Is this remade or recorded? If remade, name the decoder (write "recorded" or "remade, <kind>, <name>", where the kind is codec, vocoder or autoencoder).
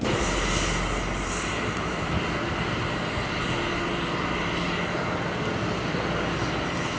recorded